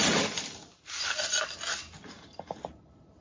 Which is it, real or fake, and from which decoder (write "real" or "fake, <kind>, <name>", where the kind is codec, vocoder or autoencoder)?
real